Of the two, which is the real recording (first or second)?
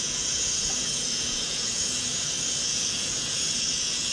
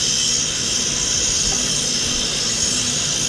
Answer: second